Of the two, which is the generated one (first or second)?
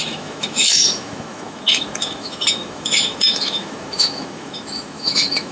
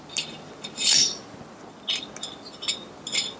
first